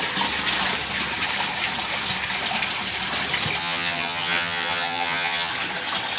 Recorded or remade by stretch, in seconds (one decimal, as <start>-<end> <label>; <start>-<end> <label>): 0.0-3.6 recorded; 3.6-5.5 remade; 5.5-6.2 recorded